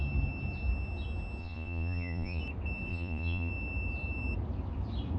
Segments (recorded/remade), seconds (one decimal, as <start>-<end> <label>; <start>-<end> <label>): 0.0-1.4 recorded; 1.4-2.4 remade; 2.4-2.9 recorded; 2.9-3.5 remade; 3.5-5.2 recorded